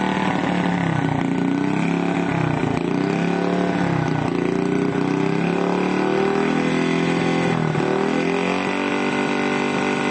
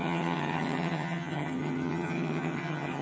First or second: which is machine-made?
second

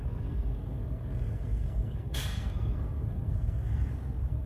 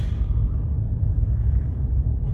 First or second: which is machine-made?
first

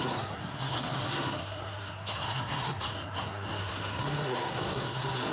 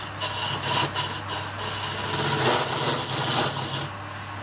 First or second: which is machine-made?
first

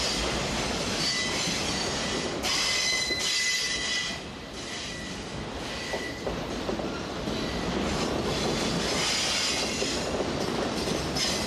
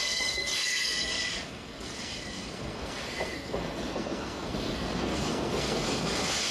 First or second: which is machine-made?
second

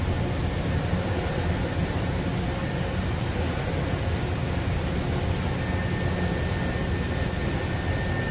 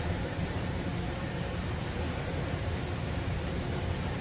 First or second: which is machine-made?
second